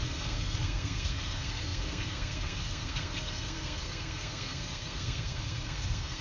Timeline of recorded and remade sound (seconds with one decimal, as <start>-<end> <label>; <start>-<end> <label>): 0.0-6.2 remade